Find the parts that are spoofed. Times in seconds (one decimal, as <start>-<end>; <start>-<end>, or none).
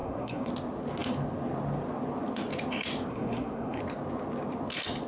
0.0-0.5; 3.1-3.8